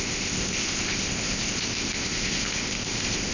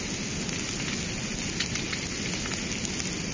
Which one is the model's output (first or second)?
first